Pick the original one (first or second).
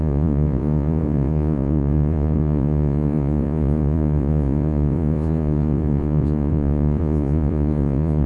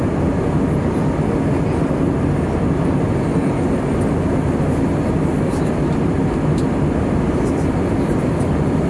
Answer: second